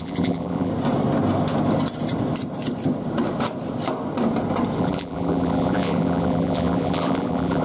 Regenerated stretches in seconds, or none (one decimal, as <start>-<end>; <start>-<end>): 0.0-0.7; 4.8-7.6